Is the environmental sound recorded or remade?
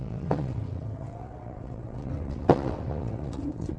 remade